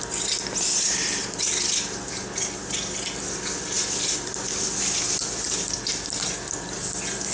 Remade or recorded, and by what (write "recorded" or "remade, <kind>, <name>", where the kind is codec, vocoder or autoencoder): recorded